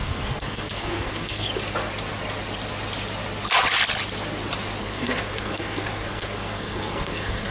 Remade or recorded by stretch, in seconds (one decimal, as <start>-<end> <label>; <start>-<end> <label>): 0.0-1.5 remade; 1.5-4.8 recorded; 4.8-7.5 remade